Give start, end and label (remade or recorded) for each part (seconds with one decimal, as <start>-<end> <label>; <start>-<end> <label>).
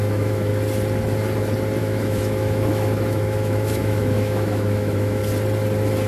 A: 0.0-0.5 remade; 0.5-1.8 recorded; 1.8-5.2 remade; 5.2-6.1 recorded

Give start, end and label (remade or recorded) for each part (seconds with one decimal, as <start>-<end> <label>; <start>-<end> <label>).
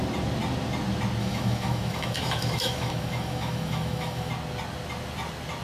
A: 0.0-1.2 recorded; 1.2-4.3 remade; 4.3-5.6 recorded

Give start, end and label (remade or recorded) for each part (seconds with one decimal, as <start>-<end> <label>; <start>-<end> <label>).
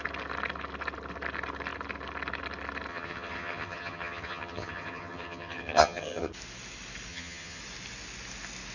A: 0.0-2.9 recorded; 2.9-6.3 remade; 6.3-7.1 recorded; 7.1-7.6 remade; 7.6-8.7 recorded